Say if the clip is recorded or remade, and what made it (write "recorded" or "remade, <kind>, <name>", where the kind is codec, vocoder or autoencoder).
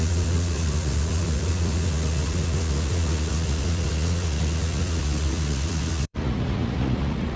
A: remade, vocoder, Vocos